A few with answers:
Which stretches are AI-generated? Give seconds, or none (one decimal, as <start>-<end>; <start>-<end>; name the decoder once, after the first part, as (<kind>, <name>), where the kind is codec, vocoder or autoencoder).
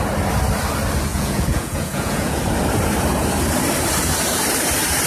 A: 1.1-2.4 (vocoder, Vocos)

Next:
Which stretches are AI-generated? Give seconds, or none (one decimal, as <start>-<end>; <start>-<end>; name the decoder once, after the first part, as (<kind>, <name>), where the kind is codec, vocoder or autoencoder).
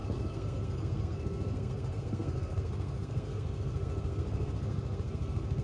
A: 0.0-5.6 (codec, SNAC)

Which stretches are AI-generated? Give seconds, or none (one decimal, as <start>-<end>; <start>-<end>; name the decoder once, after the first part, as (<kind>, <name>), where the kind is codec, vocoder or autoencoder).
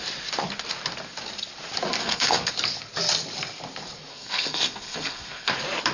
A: 2.0-2.5 (codec, SNAC); 4.1-5.5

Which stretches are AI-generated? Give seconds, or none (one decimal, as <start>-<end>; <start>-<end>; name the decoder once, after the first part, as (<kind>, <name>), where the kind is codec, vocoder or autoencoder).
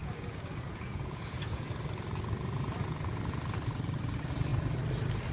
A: 0.0-1.7 (vocoder, Vocos)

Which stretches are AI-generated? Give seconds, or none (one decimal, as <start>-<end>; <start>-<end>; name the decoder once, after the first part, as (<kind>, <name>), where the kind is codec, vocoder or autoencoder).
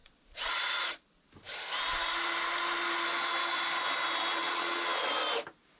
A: 0.0-1.0 (vocoder, Vocos); 4.4-5.1